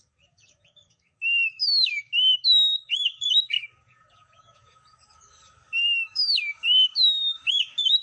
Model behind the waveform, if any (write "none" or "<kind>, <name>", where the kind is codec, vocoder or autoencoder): codec, DAC